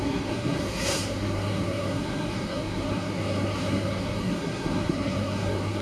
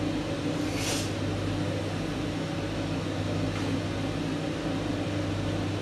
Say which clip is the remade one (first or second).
first